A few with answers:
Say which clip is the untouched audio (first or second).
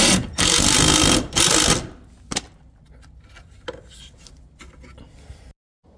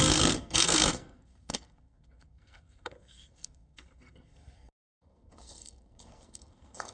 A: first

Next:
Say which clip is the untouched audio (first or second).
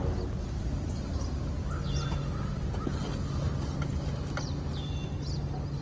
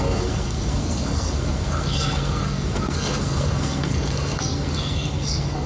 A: first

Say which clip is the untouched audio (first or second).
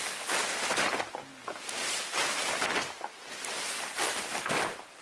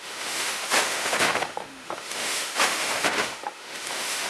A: first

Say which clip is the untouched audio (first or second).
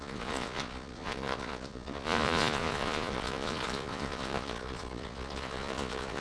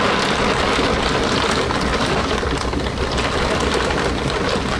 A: second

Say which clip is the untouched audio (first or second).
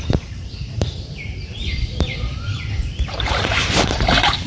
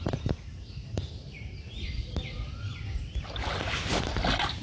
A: second